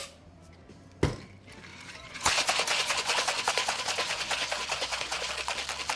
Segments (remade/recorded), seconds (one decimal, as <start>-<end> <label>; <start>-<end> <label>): 0.0-1.7 recorded; 1.7-5.3 remade; 5.3-6.0 recorded